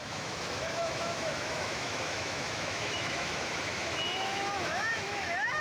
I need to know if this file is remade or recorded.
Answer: remade